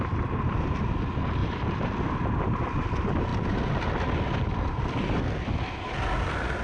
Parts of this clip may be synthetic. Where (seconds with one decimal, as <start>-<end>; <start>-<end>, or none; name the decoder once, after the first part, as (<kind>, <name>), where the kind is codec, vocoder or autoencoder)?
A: 1.4-1.9 (vocoder, BigVGAN v2)